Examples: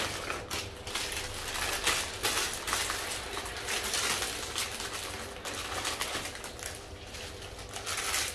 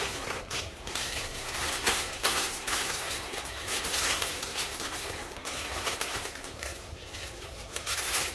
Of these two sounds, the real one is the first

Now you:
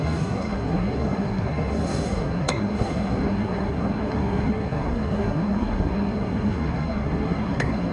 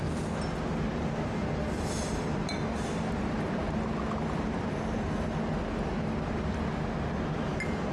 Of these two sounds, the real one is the second